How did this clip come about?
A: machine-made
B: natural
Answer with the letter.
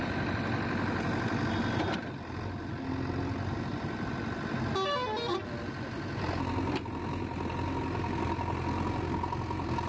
B